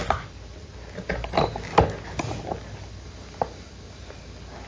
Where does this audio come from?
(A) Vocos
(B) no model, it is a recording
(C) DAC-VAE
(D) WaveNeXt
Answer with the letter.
B